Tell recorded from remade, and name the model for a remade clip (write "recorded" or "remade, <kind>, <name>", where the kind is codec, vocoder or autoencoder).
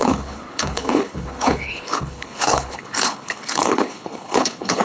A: remade, codec, HILCodec